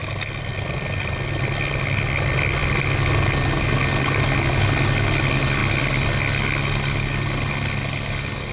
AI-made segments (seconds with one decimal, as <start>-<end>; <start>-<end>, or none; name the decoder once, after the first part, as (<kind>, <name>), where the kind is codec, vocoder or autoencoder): none